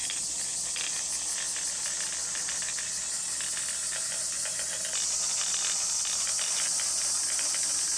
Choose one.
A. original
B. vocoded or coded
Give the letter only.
A